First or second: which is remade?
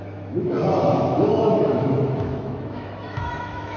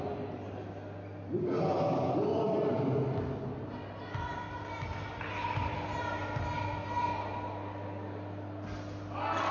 first